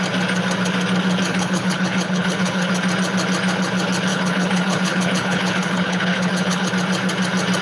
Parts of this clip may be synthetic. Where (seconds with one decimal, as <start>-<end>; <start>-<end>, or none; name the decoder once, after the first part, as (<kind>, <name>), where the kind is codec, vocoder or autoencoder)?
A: 1.3-2.7 (codec, HILCodec); 4.1-6.7